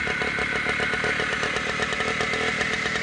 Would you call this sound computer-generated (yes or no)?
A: no